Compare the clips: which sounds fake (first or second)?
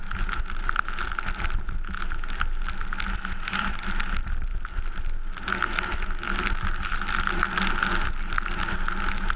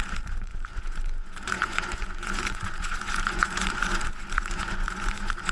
second